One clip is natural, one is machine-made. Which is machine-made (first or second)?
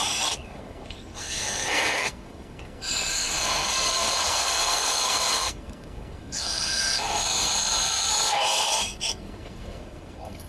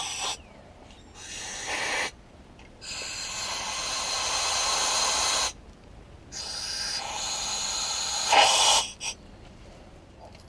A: first